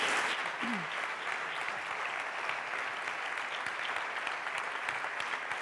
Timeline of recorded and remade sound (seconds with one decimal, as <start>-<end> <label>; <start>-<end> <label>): 0.0-5.6 recorded